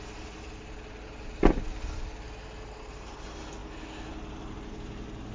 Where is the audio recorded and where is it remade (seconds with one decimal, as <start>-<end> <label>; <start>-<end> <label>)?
0.0-5.3 recorded